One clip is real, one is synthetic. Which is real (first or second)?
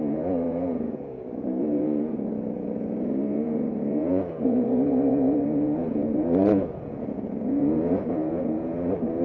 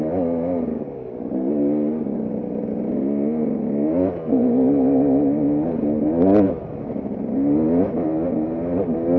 second